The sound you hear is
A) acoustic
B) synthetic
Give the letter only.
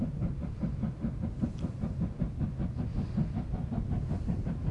A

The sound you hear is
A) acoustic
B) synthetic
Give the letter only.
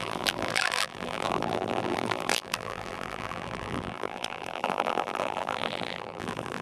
B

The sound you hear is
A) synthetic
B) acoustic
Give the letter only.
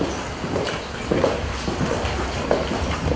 B